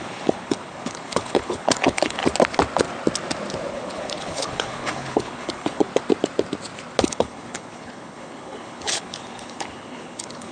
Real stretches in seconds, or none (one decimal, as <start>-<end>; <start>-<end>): 2.2-3.7; 5.9-7.0